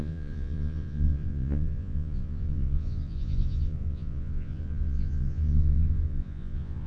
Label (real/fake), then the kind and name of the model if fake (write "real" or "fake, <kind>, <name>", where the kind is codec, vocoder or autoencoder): fake, vocoder, Vocos